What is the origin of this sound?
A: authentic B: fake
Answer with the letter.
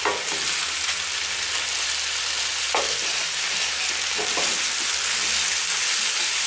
A